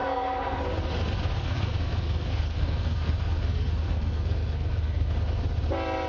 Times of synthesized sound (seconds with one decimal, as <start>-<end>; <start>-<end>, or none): 0.0-0.6; 1.4-5.1